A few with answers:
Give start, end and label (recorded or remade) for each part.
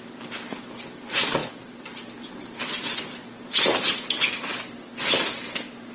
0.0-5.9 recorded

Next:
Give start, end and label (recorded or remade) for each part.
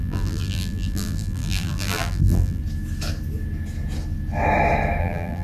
0.0-2.6 remade; 2.6-5.0 recorded; 5.0-5.4 remade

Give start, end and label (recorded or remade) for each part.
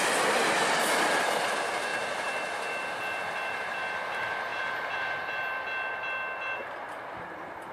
0.0-6.6 recorded; 6.6-7.3 remade; 7.3-7.7 recorded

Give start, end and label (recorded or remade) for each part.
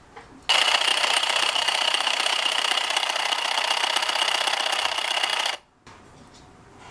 0.0-0.9 recorded; 0.9-3.2 remade; 3.2-6.9 recorded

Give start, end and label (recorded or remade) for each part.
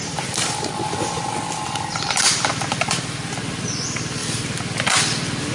0.0-5.5 recorded